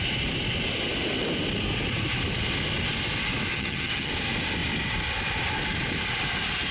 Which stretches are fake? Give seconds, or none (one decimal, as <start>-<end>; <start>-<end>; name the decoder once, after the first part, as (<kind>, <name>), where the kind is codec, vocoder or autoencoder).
3.5-4.1 (vocoder, HiFi-GAN)